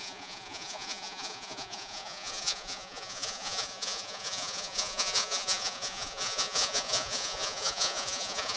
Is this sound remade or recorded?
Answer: remade